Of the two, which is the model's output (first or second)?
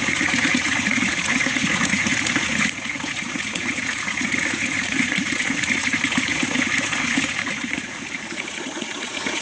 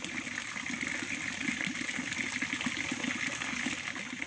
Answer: first